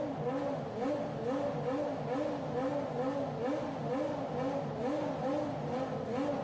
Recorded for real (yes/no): yes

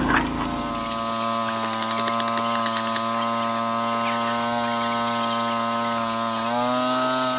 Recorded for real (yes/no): yes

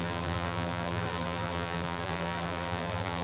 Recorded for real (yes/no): no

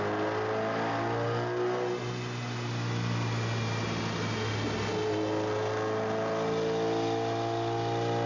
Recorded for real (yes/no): yes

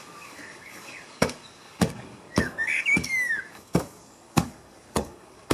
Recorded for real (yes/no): no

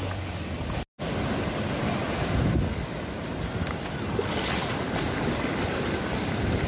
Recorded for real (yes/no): yes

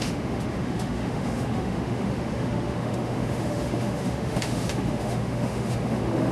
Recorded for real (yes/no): no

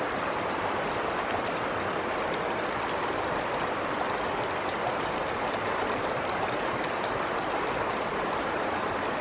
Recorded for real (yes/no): no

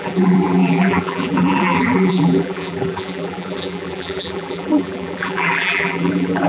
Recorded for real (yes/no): no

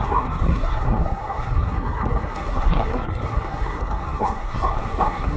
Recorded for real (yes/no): no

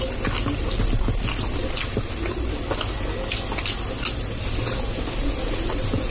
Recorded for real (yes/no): yes